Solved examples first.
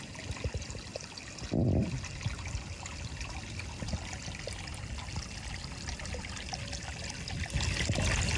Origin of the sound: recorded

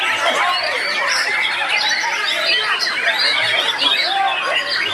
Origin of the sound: recorded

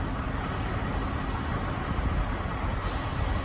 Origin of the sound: recorded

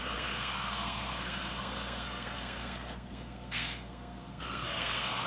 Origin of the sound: remade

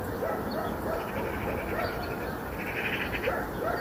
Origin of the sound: recorded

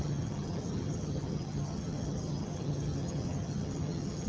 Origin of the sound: remade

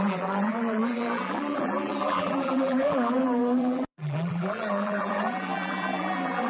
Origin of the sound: remade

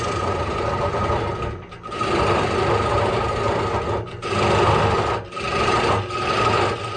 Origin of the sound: recorded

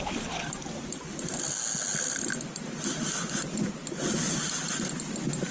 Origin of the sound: recorded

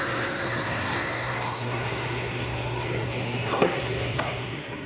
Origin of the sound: remade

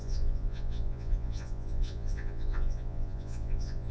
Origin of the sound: remade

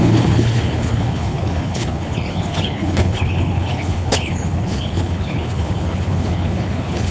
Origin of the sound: remade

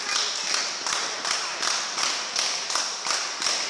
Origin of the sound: recorded